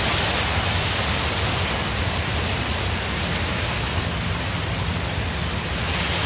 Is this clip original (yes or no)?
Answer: yes